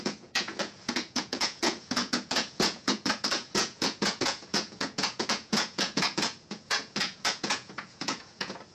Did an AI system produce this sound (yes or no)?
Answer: yes